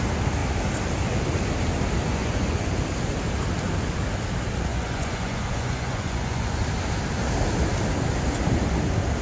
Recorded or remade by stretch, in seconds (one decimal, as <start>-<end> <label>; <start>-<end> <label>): 0.0-2.1 recorded; 2.1-2.7 remade; 2.7-4.7 recorded; 4.7-6.6 remade; 6.6-9.2 recorded